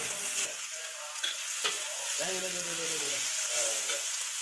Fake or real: fake